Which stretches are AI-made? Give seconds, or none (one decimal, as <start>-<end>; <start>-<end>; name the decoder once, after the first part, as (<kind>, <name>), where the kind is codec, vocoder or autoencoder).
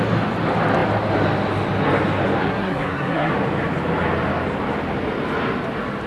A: 2.4-3.3 (codec, SNAC)